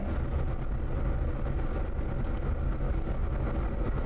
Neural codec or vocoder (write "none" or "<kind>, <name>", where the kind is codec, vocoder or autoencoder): none